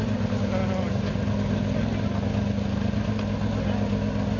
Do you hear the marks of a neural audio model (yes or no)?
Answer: no